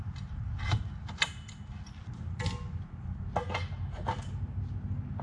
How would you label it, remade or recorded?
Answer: recorded